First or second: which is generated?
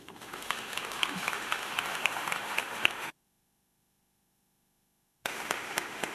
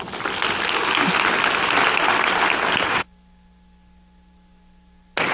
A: first